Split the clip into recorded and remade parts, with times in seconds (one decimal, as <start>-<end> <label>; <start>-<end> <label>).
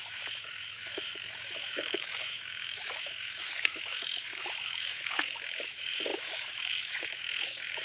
0.0-7.8 remade